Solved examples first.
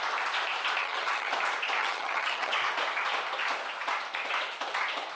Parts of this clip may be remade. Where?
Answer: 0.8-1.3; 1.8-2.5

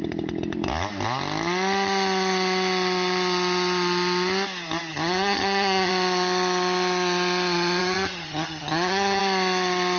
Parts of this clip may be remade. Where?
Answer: 4.9-5.9; 7.8-9.2